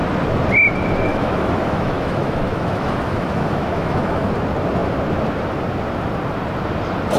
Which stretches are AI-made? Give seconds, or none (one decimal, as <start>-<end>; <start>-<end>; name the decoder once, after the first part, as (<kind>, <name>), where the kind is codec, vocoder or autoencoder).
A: 1.1-4.3 (autoencoder, DAC-VAE)